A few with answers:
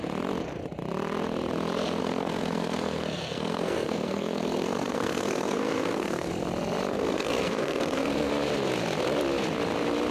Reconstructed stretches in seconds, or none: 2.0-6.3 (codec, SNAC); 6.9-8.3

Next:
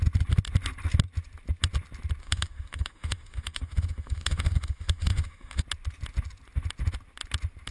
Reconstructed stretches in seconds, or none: 2.2-5.6 (autoencoder, DAC-VAE)

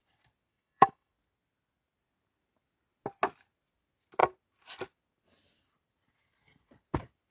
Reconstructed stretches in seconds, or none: 0.5-1.1 (autoencoder, DAC-VAE)

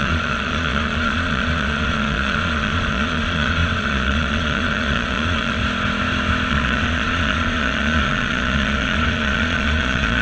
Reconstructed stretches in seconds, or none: 0.0-5.6 (vocoder, Vocos); 6.5-10.2